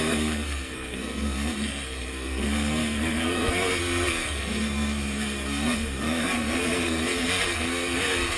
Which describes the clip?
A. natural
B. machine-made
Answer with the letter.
B